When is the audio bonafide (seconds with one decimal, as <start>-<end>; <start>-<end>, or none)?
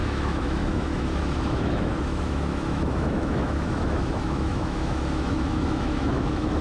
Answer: none